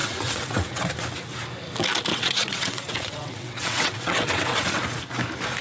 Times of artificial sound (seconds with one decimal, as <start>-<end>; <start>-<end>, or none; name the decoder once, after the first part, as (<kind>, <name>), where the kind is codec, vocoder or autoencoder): 0.0-0.8 (vocoder, WaveNeXt); 2.1-4.8